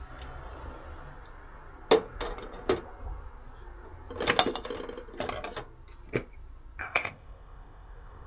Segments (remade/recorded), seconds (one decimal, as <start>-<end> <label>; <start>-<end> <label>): 0.0-6.8 recorded; 6.8-8.3 remade